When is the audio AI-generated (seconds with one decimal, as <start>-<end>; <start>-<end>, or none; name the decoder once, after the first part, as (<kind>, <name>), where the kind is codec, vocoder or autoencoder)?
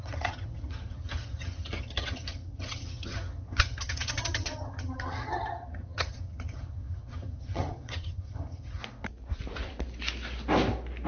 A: 0.0-8.8 (vocoder, HiFi-GAN)